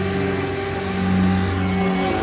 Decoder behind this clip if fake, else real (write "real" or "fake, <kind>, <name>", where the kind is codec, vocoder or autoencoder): real